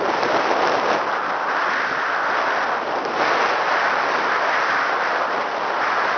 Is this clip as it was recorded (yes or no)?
yes